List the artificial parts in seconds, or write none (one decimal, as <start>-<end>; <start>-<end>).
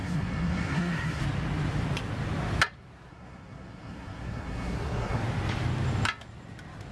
0.0-1.2; 3.1-5.2